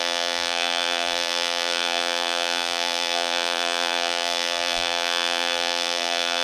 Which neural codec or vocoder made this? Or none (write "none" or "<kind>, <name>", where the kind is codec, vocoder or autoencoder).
vocoder, BigVGAN v2